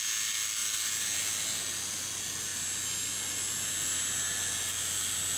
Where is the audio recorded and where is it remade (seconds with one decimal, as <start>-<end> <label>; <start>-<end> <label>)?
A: 0.0-5.4 recorded